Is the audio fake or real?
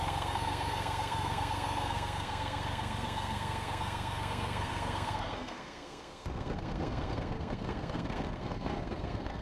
fake